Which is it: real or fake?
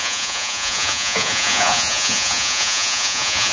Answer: fake